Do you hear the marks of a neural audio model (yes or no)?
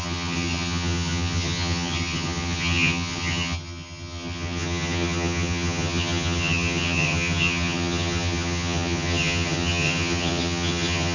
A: yes